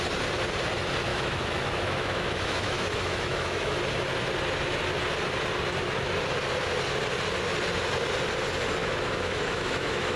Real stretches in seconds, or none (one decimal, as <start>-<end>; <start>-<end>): 0.0-1.1; 3.8-8.8